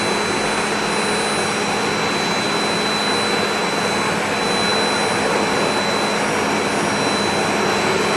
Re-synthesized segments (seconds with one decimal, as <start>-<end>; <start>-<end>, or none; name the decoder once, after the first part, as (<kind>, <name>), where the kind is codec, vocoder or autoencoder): none